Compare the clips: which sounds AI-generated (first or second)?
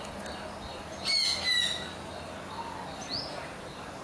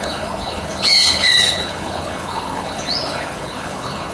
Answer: second